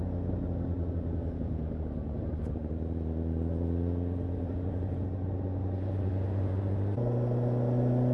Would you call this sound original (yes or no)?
yes